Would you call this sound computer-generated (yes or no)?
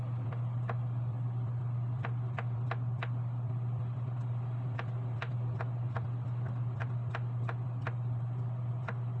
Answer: no